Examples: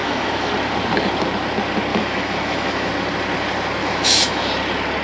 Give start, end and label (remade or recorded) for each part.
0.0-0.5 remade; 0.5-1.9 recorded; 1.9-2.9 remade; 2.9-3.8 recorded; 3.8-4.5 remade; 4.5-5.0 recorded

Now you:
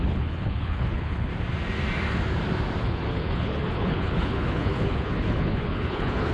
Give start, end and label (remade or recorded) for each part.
0.0-1.3 remade; 1.3-2.8 recorded; 2.8-6.3 remade

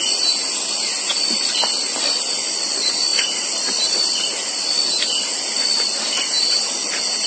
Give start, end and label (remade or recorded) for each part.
0.0-3.1 recorded; 3.1-4.0 remade; 4.0-7.3 recorded

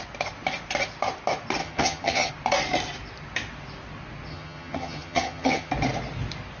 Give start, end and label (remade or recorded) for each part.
0.0-1.6 recorded; 1.6-2.3 remade; 2.3-4.3 recorded; 4.3-5.7 remade; 5.7-6.6 recorded

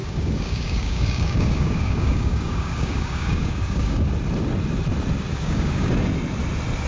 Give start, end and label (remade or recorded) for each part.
0.0-4.1 remade; 4.1-5.3 recorded; 5.3-5.9 remade; 5.9-6.9 recorded